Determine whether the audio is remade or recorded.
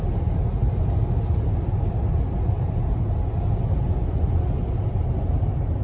recorded